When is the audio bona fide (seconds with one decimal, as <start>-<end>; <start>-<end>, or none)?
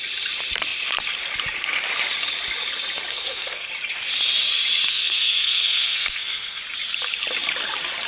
0.0-3.1; 3.7-4.9; 6.6-8.1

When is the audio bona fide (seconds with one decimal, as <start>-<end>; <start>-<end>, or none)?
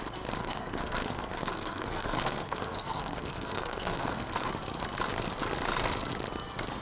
0.0-0.4; 4.5-6.8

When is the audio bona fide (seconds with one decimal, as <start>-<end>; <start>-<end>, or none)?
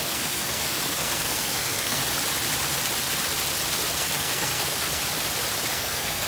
2.0-3.9; 5.0-5.7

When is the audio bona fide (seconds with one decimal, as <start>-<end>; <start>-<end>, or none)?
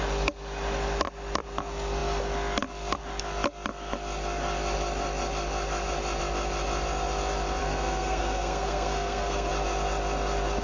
0.0-7.6; 9.5-10.6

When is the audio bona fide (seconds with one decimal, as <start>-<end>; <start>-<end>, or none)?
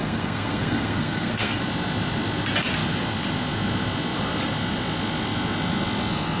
1.6-6.4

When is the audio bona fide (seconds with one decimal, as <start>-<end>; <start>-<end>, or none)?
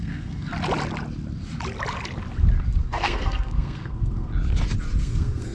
0.5-2.8; 4.3-5.0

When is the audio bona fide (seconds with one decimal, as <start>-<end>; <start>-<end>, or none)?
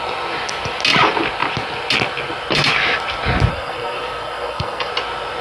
0.0-3.5; 4.9-5.4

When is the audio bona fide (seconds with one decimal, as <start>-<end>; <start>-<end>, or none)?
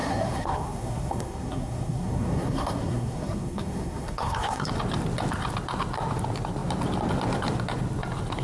4.7-8.4